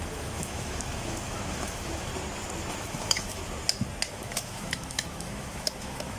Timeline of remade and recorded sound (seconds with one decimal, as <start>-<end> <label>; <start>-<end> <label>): 0.0-2.1 remade; 2.1-2.8 recorded; 2.8-3.4 remade; 3.4-4.1 recorded; 4.1-6.2 remade